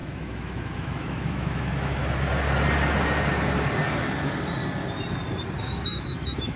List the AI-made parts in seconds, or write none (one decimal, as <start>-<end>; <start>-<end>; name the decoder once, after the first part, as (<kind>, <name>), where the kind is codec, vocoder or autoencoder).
0.0-2.0 (autoencoder, DAC-VAE); 5.6-6.6